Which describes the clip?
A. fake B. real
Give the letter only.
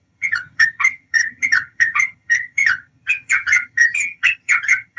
A